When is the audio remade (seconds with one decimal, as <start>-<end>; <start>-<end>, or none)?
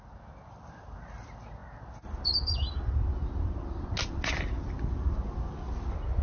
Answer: none